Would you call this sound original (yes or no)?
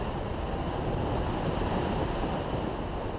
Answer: yes